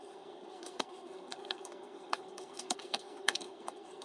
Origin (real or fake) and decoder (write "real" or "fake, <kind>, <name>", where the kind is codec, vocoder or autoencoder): fake, codec, SNAC